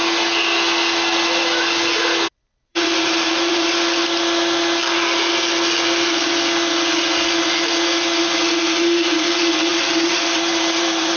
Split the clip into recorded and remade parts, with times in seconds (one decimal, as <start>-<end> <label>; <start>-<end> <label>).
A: 0.0-2.7 recorded; 2.7-3.7 remade; 3.7-9.7 recorded; 9.7-11.2 remade